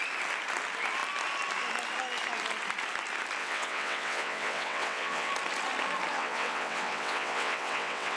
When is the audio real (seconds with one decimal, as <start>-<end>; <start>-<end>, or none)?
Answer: 0.0-3.4; 5.3-6.1